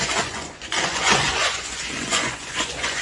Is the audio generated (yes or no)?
yes